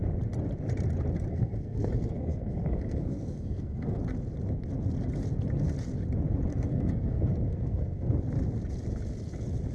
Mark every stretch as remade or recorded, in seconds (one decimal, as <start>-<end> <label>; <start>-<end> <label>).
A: 0.0-1.3 recorded; 1.3-4.0 remade; 4.0-6.5 recorded; 6.5-8.1 remade; 8.1-9.7 recorded